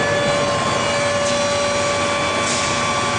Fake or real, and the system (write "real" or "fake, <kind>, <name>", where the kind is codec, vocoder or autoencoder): real